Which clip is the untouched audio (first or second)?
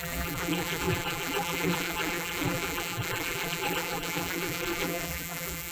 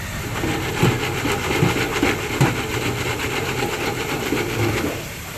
second